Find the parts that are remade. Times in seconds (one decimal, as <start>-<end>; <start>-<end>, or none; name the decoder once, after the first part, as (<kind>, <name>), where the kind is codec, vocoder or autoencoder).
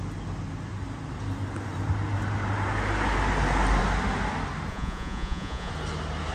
4.7-5.7 (vocoder, Vocos)